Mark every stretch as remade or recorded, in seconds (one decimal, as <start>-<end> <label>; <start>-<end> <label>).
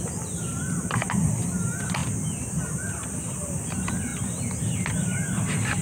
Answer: 0.0-5.8 recorded